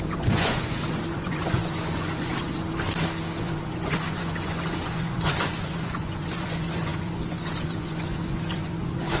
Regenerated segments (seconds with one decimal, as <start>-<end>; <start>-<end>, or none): 0.0-2.7; 3.4-9.2